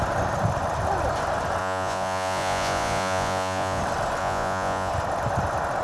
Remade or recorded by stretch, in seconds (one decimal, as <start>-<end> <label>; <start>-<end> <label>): 0.0-1.6 recorded; 1.6-3.8 remade; 3.8-4.2 recorded; 4.2-4.9 remade; 4.9-5.8 recorded